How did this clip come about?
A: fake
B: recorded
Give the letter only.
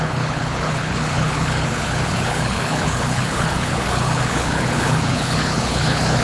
A